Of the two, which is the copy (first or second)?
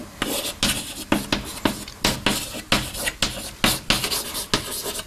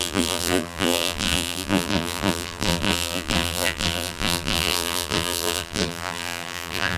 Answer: second